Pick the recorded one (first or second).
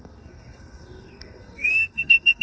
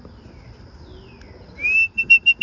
second